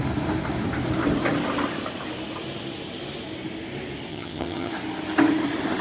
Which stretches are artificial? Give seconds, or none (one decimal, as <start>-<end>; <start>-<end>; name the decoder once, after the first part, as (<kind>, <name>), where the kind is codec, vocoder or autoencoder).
4.1-4.7 (vocoder, HiFi-GAN)